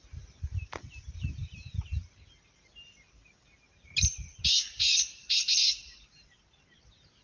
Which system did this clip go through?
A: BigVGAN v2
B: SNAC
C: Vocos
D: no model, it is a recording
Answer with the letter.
D